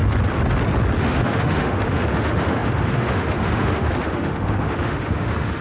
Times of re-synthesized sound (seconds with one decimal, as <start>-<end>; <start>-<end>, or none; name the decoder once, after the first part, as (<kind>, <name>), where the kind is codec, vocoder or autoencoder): 1.0-5.6 (autoencoder, DAC-VAE)